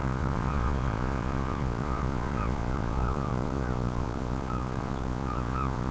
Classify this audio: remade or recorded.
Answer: remade